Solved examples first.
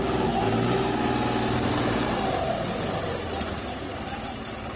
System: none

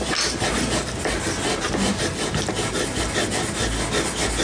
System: none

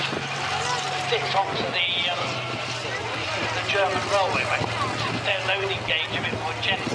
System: none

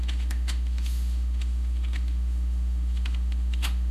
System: autoencoder, DAC-VAE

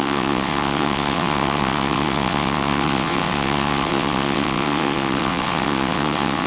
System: vocoder, WaveNeXt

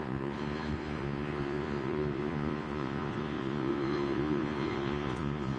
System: vocoder, Vocos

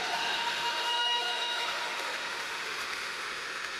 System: autoencoder, DAC-VAE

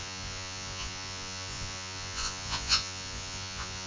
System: vocoder, Vocos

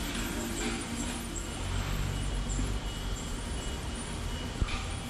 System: none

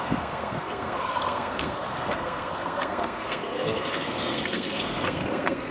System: codec, SNAC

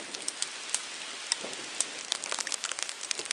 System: none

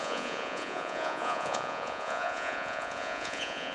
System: vocoder, Vocos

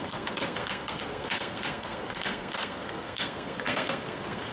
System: codec, SNAC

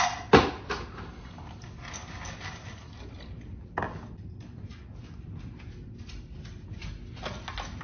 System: none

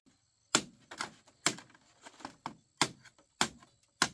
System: none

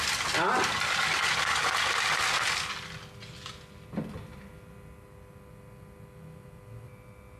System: none